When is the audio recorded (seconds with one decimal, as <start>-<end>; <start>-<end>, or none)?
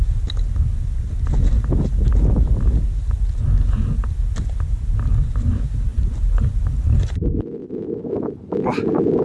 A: 0.0-9.2